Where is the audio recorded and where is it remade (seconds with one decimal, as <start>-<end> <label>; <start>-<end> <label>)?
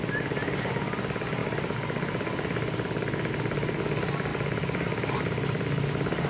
0.0-6.3 recorded